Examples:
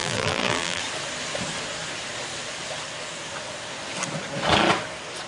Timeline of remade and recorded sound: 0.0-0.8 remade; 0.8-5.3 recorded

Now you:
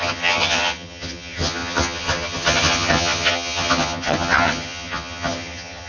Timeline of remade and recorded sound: 0.0-5.9 remade

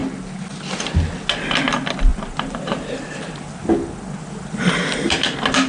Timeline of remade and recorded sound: 0.0-5.7 recorded

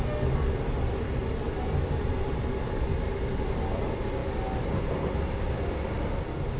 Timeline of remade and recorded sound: 0.0-6.6 recorded

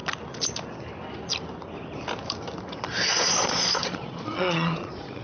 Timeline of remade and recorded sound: 0.0-3.1 recorded; 3.1-5.2 remade

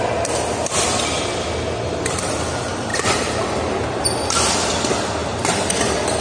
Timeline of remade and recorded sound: 0.0-6.2 recorded